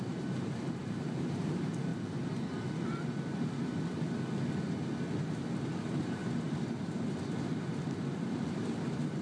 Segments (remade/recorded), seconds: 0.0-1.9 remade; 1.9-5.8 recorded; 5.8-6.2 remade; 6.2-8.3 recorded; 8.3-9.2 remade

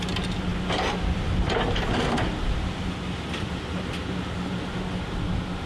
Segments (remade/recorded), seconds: 0.0-5.7 recorded

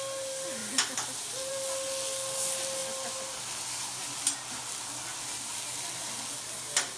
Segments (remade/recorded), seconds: 0.0-7.0 recorded

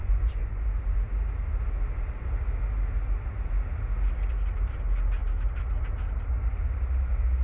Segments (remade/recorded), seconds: 0.0-0.6 remade; 0.6-7.4 recorded

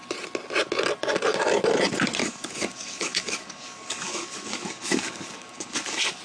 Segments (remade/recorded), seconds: 0.0-2.2 recorded; 2.2-6.2 remade